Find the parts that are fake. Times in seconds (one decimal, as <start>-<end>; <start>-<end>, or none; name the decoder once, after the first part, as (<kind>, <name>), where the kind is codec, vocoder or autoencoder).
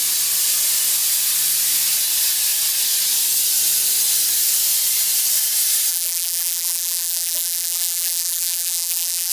5.9-9.3 (vocoder, BigVGAN v2)